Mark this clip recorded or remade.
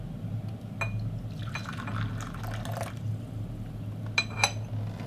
recorded